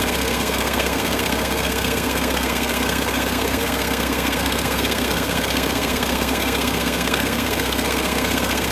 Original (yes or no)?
no